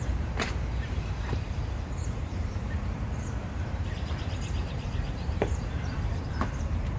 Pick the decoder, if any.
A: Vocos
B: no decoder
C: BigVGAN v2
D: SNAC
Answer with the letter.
C